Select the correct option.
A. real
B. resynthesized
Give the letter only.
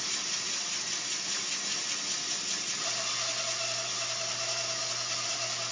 A